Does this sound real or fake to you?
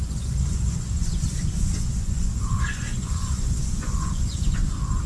fake